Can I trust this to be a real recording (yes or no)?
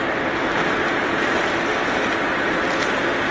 yes